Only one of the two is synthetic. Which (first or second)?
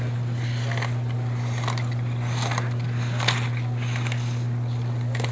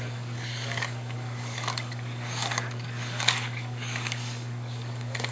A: second